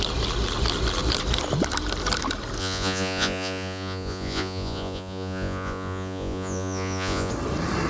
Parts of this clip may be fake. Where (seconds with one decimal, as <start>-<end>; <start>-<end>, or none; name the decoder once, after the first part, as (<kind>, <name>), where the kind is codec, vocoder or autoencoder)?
2.6-7.3 (vocoder, Vocos)